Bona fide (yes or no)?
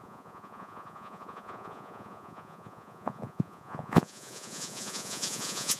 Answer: no